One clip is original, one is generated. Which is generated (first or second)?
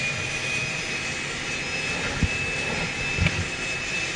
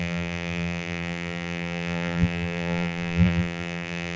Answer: second